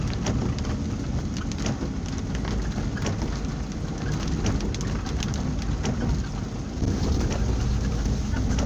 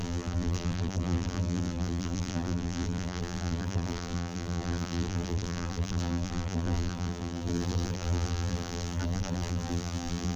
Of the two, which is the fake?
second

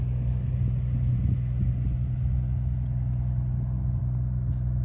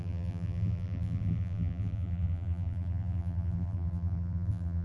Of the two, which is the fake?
second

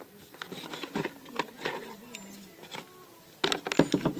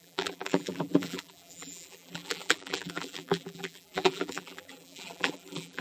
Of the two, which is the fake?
second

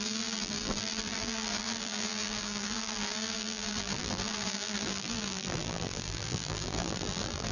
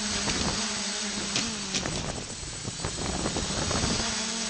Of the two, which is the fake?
first